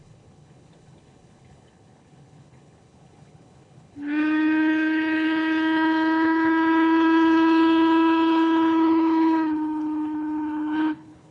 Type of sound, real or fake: fake